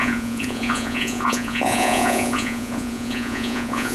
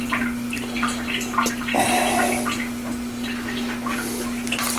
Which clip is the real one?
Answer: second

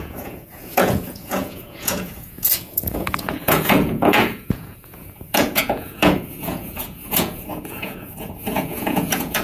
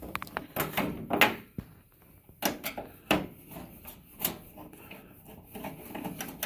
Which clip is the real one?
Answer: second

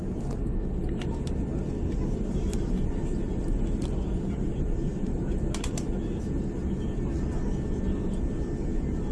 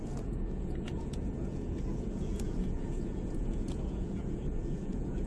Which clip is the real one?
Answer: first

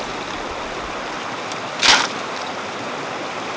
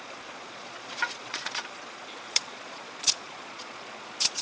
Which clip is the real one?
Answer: first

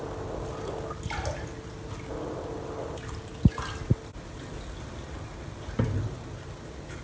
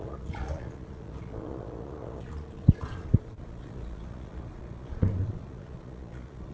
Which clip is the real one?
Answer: first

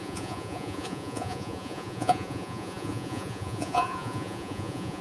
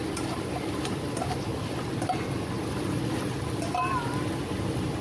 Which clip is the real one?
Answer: second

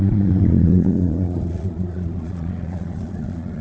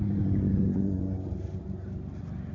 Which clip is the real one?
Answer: second